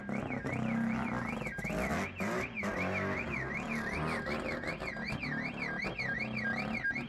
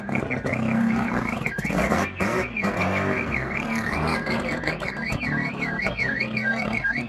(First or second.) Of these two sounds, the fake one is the second